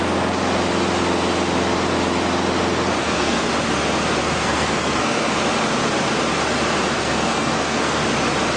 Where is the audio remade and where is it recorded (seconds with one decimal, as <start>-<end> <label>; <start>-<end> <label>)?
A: 0.0-3.0 recorded; 3.0-3.5 remade; 3.5-4.2 recorded; 4.2-5.4 remade; 5.4-7.0 recorded; 7.0-8.0 remade; 8.0-8.6 recorded